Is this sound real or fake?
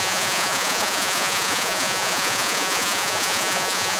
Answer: fake